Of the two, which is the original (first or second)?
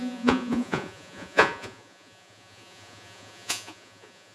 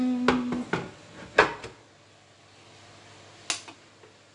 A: second